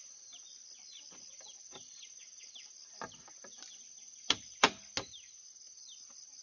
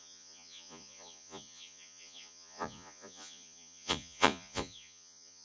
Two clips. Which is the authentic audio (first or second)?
first